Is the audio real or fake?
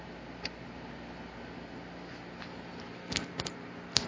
real